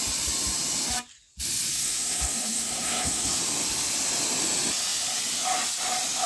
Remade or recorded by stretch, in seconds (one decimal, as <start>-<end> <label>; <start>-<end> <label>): 0.0-1.7 recorded; 1.7-3.4 remade; 3.4-6.3 recorded